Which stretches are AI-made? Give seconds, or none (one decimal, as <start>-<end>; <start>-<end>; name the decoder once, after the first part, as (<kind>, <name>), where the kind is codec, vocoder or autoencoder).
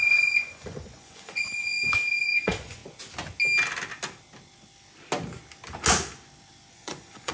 0.0-2.8 (vocoder, Vocos); 6.7-7.3